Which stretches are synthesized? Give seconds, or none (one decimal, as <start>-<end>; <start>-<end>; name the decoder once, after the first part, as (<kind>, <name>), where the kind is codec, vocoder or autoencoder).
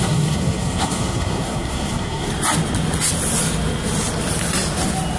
0.0-2.3 (codec, SNAC)